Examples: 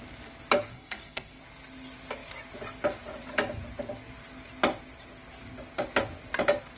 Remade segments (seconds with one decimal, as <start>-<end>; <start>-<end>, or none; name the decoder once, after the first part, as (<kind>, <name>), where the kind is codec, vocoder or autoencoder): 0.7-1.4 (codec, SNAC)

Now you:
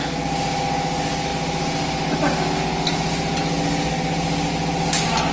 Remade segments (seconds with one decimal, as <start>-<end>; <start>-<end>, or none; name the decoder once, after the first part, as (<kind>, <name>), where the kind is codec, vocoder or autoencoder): none

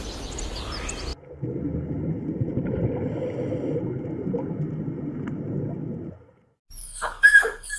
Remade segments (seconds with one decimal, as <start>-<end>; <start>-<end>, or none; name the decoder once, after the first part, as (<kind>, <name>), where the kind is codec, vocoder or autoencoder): 6.8-7.8 (codec, SNAC)

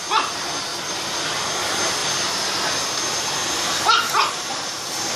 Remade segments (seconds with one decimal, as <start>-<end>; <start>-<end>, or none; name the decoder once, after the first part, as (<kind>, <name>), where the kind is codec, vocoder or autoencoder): none